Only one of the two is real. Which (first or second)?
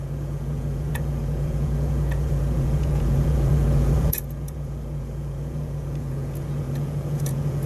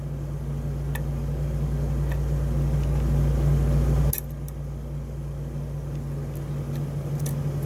second